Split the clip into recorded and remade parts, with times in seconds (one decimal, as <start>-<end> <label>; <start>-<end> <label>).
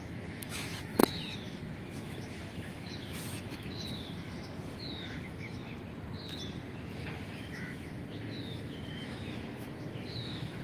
0.0-5.6 remade; 5.6-7.2 recorded; 7.2-10.6 remade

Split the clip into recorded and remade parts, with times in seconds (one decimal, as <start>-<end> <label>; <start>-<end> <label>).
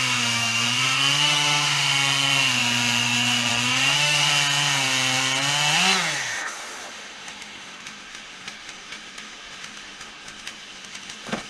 0.0-4.3 remade; 4.3-6.2 recorded; 6.2-11.5 remade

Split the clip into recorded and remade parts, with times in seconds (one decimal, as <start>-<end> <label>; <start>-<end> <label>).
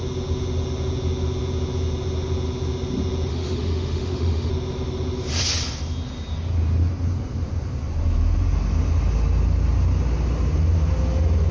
0.0-3.3 recorded; 3.3-4.5 remade; 4.5-11.5 recorded